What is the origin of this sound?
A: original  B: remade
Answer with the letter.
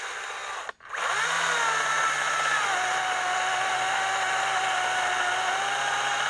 A